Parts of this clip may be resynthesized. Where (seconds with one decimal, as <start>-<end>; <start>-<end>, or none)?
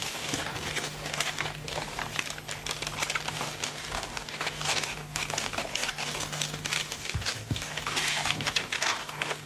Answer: 0.0-2.0; 3.3-9.5